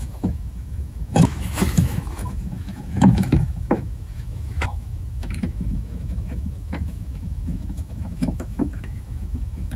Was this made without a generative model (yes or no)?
no